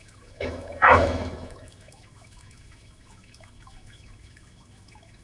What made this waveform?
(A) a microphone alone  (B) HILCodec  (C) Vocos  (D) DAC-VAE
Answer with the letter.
D